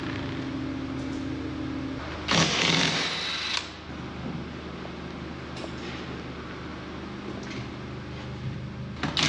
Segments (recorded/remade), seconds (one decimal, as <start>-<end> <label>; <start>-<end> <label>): 0.0-9.3 recorded